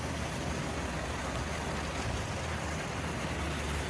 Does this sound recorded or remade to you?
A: recorded